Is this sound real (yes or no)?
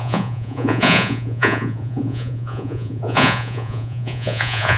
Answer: no